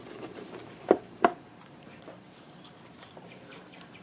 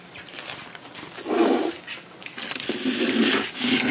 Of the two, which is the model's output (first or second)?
first